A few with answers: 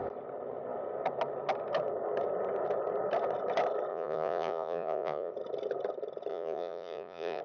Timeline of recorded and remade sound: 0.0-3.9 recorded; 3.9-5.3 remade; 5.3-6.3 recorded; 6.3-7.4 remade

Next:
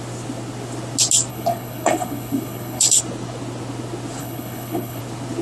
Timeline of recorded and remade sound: 0.0-1.3 recorded; 1.3-3.0 remade; 3.0-4.2 recorded; 4.2-5.0 remade; 5.0-5.4 recorded

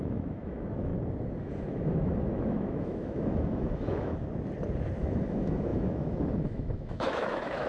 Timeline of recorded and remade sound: 0.0-0.9 remade; 0.9-1.4 recorded; 1.4-4.1 remade; 4.1-5.0 recorded; 5.0-7.7 remade